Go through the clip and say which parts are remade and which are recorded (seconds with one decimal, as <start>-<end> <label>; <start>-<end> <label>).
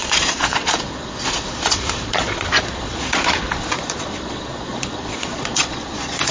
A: 0.0-6.3 remade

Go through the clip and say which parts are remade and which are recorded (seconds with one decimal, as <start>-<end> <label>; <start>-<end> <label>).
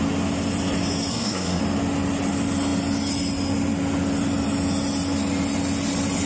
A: 0.0-1.1 recorded; 1.1-1.6 remade; 1.6-6.3 recorded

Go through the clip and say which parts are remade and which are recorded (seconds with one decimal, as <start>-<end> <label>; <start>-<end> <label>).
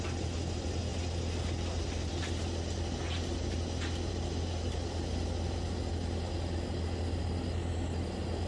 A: 0.0-8.5 recorded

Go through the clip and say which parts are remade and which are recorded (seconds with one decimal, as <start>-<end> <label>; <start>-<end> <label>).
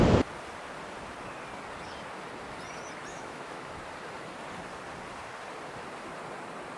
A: 0.0-3.1 recorded; 3.1-3.7 remade; 3.7-6.8 recorded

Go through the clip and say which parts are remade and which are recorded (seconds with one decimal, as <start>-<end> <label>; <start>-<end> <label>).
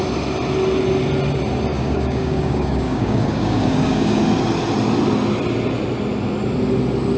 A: 0.0-1.7 recorded; 1.7-4.2 remade; 4.2-7.2 recorded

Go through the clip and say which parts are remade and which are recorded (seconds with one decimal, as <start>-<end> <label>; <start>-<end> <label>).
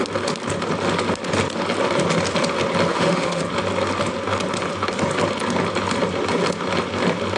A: 0.0-2.9 recorded; 2.9-3.4 remade; 3.4-7.4 recorded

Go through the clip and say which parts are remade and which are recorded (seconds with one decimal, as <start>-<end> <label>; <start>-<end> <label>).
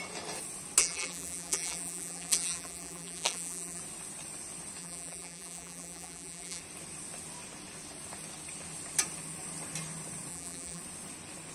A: 0.0-0.8 recorded; 0.8-3.8 remade; 3.8-4.8 recorded; 4.8-6.6 remade; 6.6-10.3 recorded; 10.3-10.8 remade; 10.8-11.5 recorded